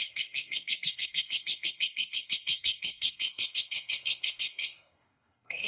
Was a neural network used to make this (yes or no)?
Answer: yes